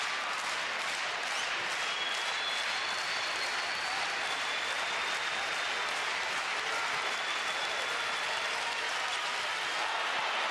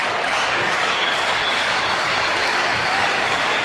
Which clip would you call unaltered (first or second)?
first